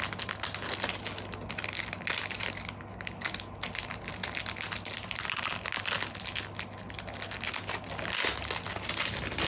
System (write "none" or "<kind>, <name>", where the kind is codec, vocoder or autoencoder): none